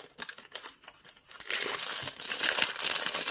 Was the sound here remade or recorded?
recorded